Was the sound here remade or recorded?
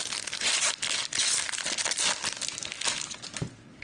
recorded